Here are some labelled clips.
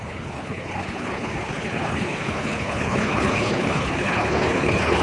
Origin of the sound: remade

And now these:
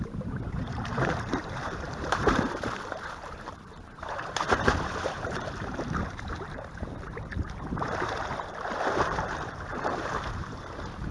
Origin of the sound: remade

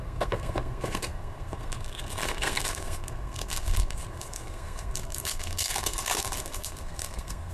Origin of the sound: remade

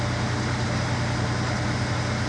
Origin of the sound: recorded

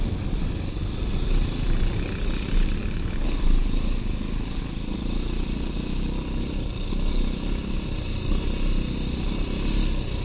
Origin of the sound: recorded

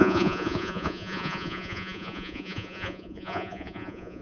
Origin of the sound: remade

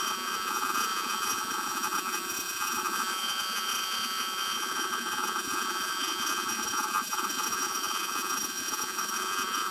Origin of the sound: remade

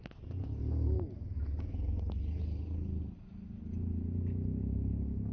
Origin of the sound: recorded